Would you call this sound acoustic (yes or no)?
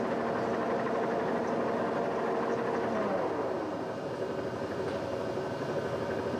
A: yes